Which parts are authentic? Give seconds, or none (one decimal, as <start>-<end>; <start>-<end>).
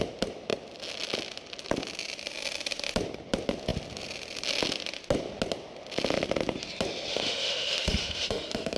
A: 0.0-7.1